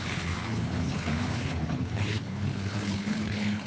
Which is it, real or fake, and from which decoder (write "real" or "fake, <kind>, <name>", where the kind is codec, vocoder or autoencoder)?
fake, codec, HILCodec